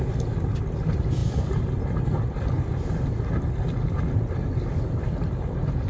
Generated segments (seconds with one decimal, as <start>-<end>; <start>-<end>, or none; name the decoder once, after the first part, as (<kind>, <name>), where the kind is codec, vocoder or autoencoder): none